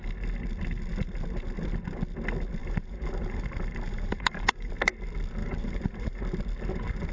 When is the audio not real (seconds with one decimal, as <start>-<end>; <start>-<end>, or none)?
2.6-4.7; 5.4-6.2